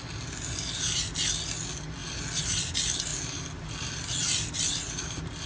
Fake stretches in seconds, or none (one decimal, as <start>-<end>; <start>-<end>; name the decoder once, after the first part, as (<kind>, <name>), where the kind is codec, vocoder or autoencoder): none